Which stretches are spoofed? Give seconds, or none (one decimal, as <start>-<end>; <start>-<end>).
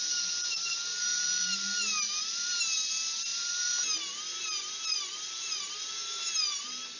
0.9-2.6; 3.3-3.8